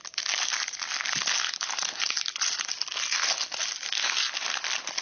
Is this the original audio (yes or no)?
yes